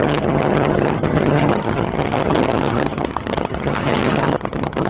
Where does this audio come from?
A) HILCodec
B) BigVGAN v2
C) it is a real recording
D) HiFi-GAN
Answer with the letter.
D